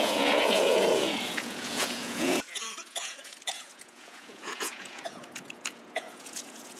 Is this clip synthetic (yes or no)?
yes